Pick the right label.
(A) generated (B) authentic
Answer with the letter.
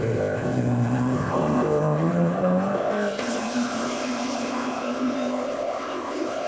A